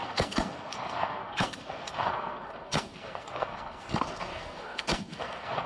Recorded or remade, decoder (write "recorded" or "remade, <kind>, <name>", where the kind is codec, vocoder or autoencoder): remade, codec, SNAC